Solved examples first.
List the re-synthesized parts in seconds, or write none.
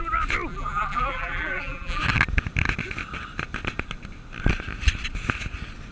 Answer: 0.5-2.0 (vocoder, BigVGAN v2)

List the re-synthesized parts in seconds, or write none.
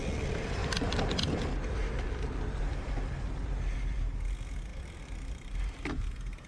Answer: 0.6-3.1 (vocoder, BigVGAN v2); 4.7-6.1